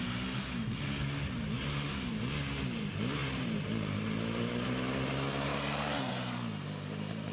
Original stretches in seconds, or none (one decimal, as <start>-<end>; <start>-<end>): 0.0-7.3